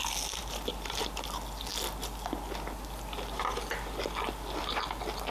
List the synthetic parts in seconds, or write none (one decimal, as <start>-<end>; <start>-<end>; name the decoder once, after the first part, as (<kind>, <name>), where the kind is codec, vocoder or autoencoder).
0.4-1.0 (vocoder, BigVGAN v2)